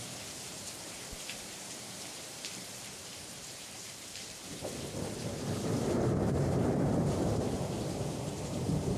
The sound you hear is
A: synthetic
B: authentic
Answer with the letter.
A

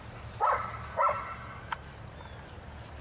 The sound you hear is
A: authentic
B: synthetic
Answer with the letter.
A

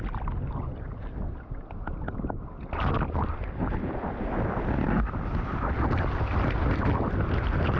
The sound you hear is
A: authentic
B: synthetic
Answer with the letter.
A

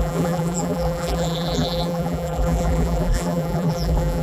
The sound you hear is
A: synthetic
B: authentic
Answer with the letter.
A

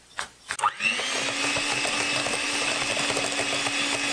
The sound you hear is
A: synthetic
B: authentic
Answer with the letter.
B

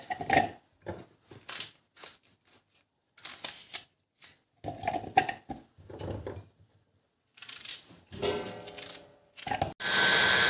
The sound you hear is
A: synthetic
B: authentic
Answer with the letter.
B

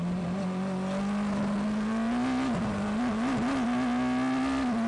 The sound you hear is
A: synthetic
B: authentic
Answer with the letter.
B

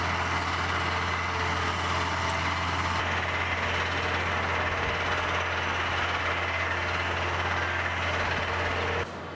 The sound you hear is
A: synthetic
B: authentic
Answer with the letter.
B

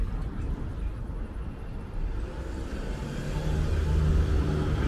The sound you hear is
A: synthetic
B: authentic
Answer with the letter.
B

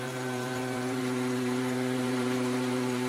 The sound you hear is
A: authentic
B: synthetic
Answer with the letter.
B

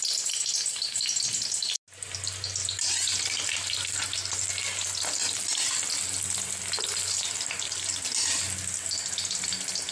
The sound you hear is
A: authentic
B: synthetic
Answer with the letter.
A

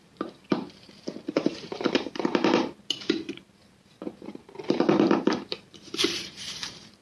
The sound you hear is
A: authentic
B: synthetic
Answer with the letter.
B